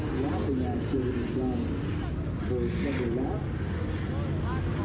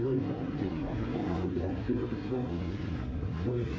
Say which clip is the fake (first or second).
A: second